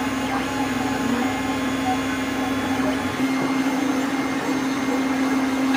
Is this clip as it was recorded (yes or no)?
yes